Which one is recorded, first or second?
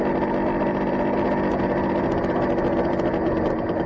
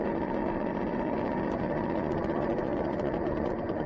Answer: first